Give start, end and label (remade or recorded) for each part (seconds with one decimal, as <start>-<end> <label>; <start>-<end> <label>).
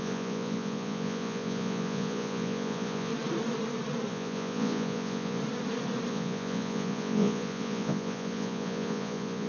0.0-3.1 remade; 3.1-4.1 recorded; 4.1-5.4 remade; 5.4-6.1 recorded; 6.1-9.5 remade